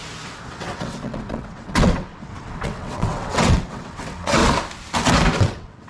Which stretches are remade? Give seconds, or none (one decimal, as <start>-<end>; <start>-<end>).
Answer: 0.5-4.4; 5.4-5.9